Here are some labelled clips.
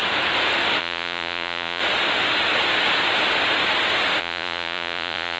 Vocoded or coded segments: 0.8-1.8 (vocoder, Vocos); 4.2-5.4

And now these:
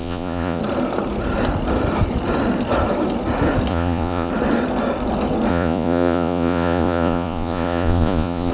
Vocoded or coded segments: 0.0-0.6 (vocoder, Vocos); 3.7-4.3; 5.5-8.5

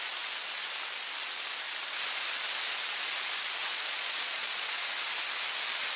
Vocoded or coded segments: 3.6-4.8 (vocoder, Vocos)

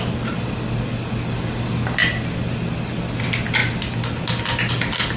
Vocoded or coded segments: none